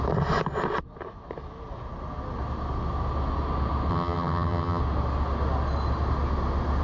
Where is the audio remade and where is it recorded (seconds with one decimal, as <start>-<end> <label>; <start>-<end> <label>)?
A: 0.0-3.9 recorded; 3.9-4.8 remade; 4.8-6.8 recorded